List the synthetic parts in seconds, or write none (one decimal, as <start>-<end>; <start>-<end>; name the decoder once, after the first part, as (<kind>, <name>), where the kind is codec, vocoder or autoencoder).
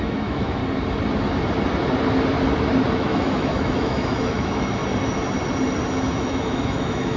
0.0-0.6 (autoencoder, DAC-VAE); 2.9-4.8; 5.9-7.2